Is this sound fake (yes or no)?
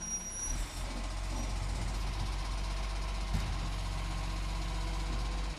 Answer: no